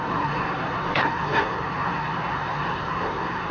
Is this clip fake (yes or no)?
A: yes